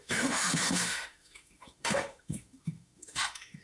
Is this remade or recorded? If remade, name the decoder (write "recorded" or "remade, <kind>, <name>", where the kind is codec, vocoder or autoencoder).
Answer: remade, autoencoder, DAC-VAE